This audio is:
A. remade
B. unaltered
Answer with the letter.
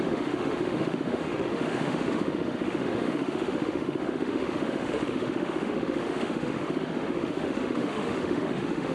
A